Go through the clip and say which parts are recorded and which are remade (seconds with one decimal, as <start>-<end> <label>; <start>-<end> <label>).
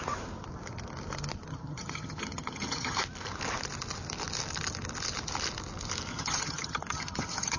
0.0-1.5 recorded; 1.5-3.0 remade; 3.0-6.1 recorded; 6.1-7.6 remade